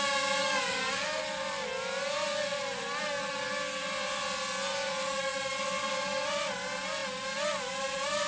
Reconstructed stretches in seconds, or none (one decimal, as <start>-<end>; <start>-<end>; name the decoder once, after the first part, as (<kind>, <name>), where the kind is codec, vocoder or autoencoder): 0.4-1.2 (codec, DAC)